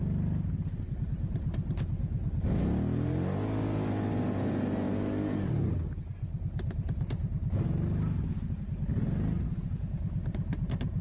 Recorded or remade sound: recorded